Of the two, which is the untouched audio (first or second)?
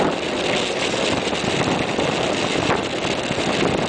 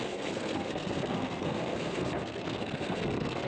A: first